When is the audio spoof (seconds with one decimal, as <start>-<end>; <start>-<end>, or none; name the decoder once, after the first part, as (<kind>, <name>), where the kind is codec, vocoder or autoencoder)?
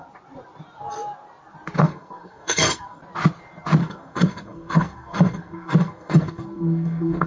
1.8-3.0 (codec, SNAC); 3.8-7.3